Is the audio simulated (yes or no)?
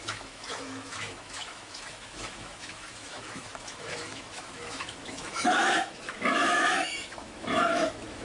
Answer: yes